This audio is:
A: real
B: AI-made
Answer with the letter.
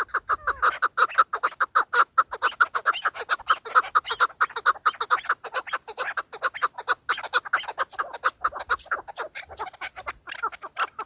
A